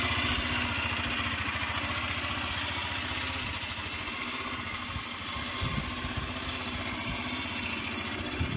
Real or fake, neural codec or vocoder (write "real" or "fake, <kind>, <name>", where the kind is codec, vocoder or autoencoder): real